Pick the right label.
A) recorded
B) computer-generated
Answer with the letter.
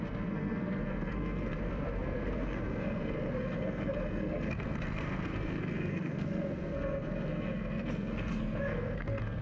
B